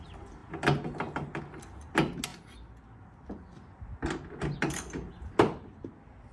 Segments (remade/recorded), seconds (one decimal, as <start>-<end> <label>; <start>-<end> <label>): 0.0-6.3 recorded